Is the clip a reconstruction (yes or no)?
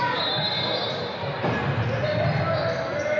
no